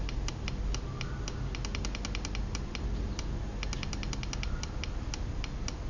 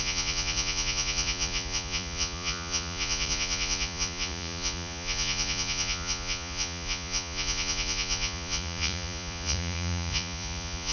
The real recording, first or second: first